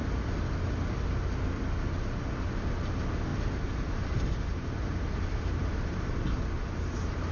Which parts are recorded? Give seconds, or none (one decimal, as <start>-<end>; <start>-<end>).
0.0-3.3; 6.1-7.3